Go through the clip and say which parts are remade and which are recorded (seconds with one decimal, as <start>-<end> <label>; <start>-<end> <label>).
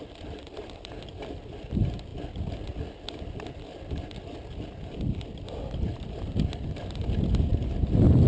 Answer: 0.0-8.3 recorded